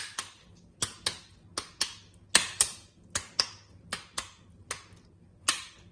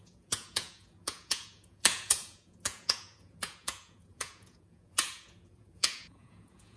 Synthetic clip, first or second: second